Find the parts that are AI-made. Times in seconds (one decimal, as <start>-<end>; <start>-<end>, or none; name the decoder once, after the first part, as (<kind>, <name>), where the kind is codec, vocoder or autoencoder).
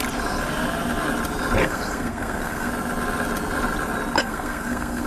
1.6-2.7 (codec, SNAC); 4.2-5.1